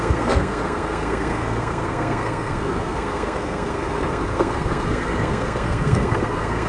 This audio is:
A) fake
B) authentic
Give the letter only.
A